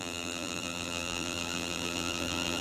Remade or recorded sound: remade